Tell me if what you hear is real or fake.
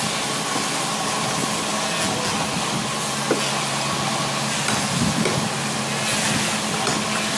real